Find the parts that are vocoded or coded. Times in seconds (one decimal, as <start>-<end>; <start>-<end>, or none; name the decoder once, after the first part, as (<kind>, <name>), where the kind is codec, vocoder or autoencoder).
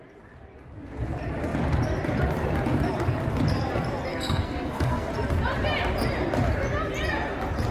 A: 4.1-5.1 (codec, SNAC)